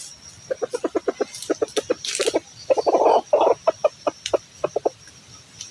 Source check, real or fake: real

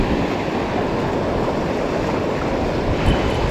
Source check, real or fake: real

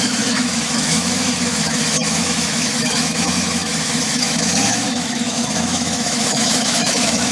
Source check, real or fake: fake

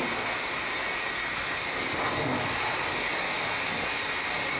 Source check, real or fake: real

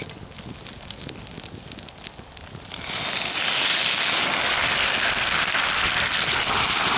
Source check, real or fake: real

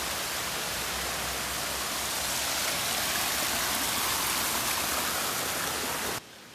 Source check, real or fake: real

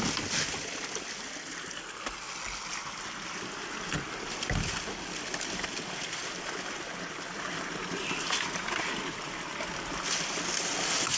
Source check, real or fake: real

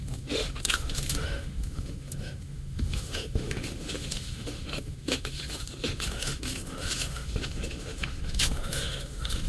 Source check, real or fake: fake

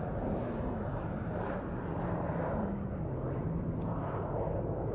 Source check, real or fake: real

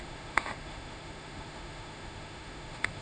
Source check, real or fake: fake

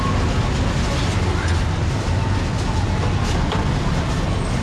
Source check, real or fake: real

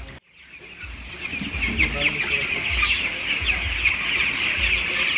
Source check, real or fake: real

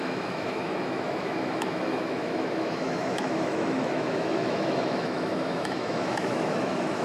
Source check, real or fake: fake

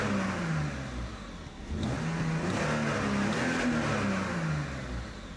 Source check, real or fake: real